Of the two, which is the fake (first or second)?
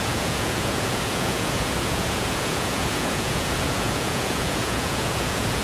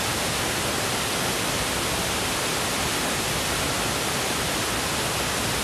first